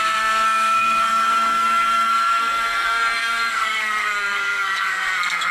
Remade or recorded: remade